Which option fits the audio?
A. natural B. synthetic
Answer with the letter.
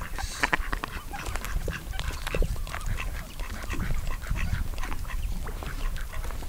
B